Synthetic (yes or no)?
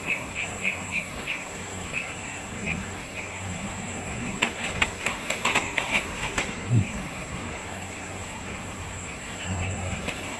yes